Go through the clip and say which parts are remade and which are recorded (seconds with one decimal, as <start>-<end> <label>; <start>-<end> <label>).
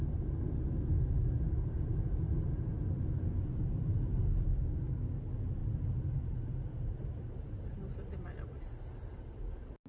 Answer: 0.0-9.9 recorded